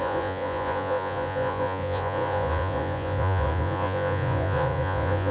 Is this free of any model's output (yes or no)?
no